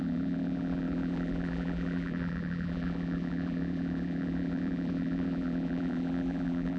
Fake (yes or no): yes